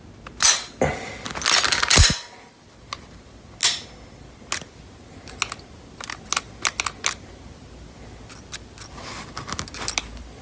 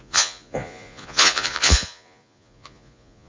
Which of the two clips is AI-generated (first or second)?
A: second